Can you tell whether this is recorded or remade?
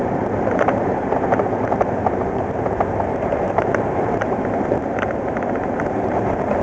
remade